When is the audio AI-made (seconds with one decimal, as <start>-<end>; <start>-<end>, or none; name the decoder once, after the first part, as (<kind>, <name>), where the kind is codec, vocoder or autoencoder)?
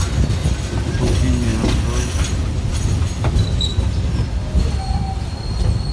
none